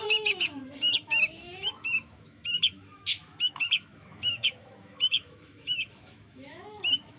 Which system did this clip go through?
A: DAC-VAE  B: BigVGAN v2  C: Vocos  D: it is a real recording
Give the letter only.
A